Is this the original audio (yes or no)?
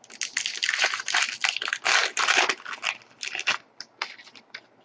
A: yes